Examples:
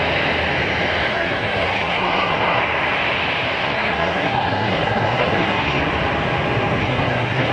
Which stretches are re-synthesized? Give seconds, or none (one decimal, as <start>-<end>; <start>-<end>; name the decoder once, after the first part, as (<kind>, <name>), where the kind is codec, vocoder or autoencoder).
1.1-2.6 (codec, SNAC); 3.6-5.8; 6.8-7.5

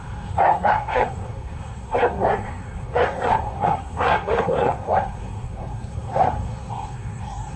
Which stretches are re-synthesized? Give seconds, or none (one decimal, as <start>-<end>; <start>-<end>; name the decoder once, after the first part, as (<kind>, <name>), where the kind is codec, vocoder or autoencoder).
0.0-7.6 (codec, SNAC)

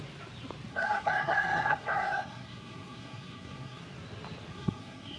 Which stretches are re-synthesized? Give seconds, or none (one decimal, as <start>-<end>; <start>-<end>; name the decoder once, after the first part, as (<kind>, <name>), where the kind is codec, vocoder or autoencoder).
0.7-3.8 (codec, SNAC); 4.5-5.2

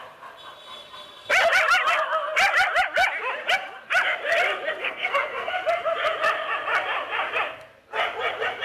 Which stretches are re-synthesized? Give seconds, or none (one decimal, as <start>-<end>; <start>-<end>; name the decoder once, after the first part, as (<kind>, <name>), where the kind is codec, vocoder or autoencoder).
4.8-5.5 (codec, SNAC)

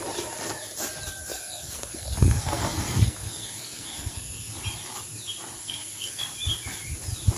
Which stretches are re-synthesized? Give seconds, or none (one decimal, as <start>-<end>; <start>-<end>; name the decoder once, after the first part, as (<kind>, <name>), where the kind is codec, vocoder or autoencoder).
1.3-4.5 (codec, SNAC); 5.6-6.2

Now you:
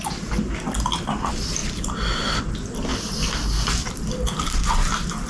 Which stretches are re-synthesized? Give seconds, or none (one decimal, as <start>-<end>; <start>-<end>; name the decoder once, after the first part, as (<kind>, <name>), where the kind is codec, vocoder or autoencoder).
none

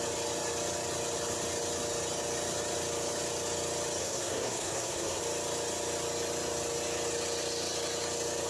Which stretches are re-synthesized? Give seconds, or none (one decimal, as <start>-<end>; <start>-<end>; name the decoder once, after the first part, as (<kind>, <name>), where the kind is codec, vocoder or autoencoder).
4.0-5.2 (codec, SNAC)

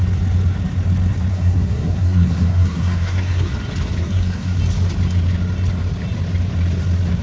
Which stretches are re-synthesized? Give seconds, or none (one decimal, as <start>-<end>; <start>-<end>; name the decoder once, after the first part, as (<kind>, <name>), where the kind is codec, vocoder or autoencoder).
1.3-3.5 (codec, SNAC); 4.0-4.6